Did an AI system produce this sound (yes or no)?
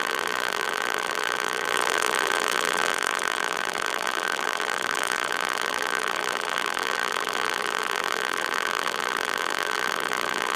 yes